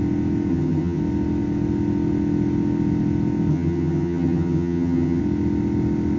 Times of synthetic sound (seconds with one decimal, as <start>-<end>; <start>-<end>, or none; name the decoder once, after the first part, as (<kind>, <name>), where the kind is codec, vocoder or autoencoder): 0.5-1.0 (vocoder, HiFi-GAN); 3.5-5.2

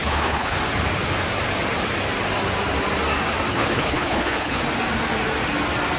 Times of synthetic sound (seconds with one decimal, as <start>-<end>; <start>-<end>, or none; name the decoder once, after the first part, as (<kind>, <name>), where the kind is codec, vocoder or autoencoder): 0.0-0.6 (codec, HILCodec); 3.5-4.6

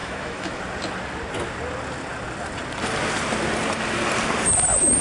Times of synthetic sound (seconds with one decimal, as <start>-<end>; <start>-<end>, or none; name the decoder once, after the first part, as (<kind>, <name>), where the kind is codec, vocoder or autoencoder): 0.0-0.6 (autoencoder, DAC-VAE)

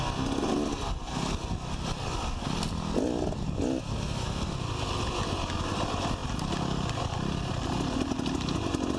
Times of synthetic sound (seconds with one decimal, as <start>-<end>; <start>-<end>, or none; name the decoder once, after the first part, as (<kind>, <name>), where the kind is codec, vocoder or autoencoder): none